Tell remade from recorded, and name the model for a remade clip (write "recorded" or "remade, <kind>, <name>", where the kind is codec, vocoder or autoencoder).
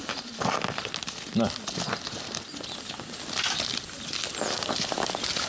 recorded